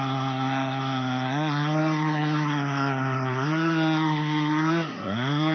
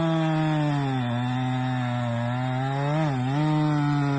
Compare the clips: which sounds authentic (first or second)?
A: second